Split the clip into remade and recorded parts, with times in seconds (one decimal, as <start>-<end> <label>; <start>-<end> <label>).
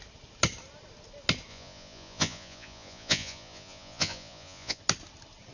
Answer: 0.0-1.5 recorded; 1.5-4.8 remade; 4.8-5.5 recorded